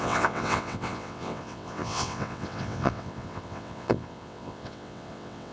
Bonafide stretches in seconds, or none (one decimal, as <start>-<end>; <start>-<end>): none